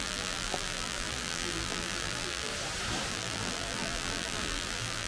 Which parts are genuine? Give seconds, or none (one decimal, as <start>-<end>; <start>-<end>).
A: 2.5-3.1